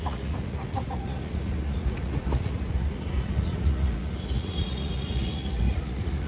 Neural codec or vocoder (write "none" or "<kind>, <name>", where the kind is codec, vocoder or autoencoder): vocoder, Vocos